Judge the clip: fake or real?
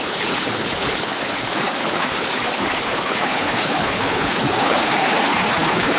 fake